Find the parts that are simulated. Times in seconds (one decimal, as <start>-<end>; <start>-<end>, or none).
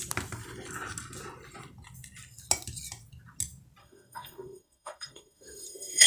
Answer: 3.8-6.1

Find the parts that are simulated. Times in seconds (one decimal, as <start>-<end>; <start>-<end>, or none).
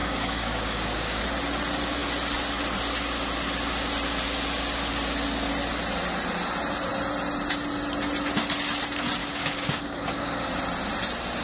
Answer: 0.0-1.2; 9.2-10.5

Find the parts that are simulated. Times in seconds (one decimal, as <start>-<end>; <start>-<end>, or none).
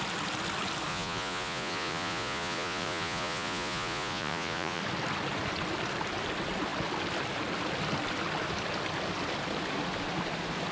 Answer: 0.9-4.8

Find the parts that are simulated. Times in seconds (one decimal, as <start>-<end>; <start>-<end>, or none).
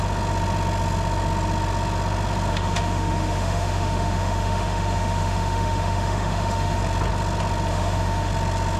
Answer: 2.5-6.8; 7.7-8.3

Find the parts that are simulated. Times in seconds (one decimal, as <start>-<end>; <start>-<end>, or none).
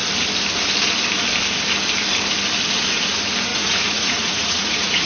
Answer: 3.5-5.1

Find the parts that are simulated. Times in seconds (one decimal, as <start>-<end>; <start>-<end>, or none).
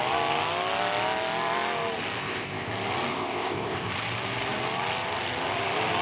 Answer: 2.2-2.7; 3.1-3.9